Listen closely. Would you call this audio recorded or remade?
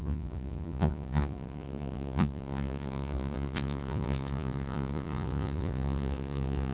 remade